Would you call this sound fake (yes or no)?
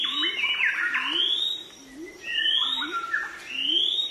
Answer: yes